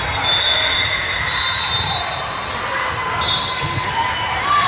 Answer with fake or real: real